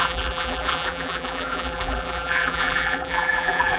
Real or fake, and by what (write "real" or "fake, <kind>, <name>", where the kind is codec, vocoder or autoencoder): fake, vocoder, BigVGAN v2